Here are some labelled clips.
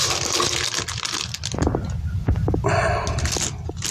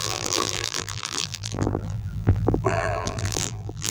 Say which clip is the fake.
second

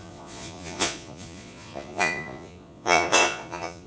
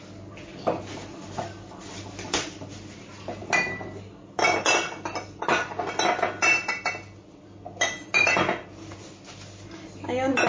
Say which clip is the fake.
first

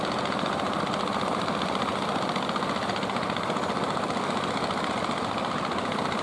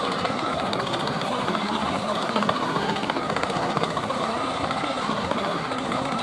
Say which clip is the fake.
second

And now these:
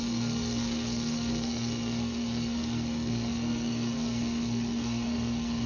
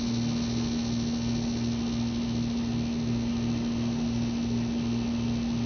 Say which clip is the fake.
first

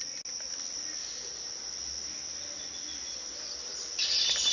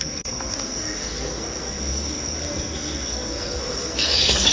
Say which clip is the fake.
second